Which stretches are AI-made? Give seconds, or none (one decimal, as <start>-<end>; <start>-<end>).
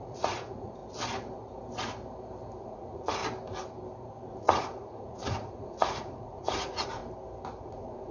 0.0-0.8; 2.6-3.2; 4.3-7.0; 7.6-8.1